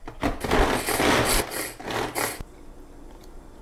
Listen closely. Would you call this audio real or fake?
real